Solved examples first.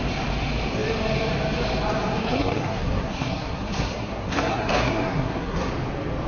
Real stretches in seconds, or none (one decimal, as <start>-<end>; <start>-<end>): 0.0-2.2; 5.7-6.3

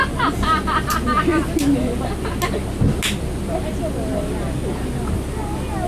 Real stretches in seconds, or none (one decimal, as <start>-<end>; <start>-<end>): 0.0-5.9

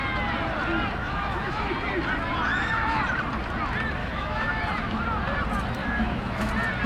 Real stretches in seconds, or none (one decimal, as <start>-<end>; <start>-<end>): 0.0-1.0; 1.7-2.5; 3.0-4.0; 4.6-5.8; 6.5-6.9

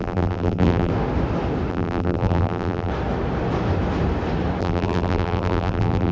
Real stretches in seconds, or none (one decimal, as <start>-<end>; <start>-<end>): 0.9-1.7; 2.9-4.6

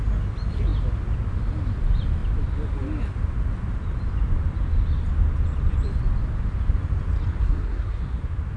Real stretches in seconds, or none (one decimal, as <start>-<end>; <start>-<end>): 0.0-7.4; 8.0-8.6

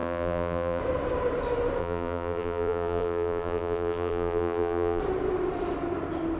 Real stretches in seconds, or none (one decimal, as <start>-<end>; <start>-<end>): 0.8-1.8; 5.0-6.4

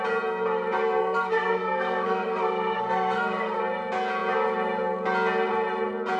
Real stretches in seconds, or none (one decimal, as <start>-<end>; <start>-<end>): 0.0-1.0; 3.6-6.2